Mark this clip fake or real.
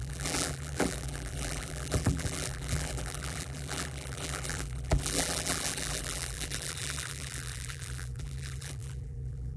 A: fake